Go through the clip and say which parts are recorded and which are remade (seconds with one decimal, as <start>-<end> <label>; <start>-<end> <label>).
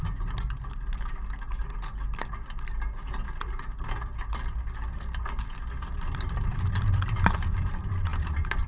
0.0-8.1 recorded; 8.1-8.7 remade